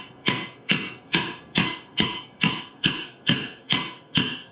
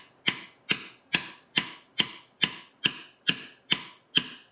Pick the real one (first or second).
second